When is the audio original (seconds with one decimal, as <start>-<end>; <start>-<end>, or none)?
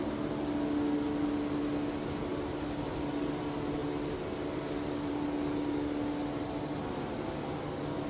0.0-8.1